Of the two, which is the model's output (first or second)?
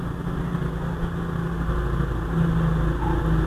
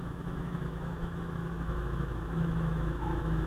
second